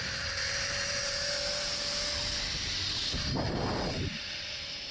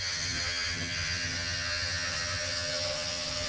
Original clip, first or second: first